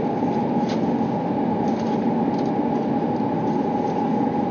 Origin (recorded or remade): recorded